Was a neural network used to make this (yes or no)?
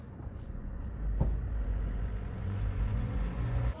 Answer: yes